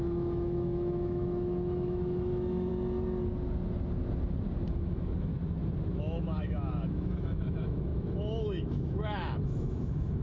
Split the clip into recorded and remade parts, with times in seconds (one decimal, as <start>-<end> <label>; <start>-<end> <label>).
0.0-2.7 remade; 2.7-4.7 recorded; 4.7-5.3 remade; 5.3-5.9 recorded; 5.9-10.2 remade